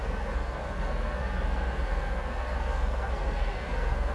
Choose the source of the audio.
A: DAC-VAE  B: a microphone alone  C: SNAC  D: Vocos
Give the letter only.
C